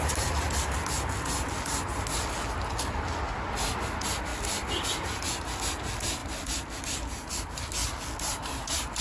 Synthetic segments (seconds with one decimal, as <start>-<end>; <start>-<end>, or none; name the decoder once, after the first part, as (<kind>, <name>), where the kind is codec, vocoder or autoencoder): 4.3-5.6 (vocoder, BigVGAN v2); 6.2-6.8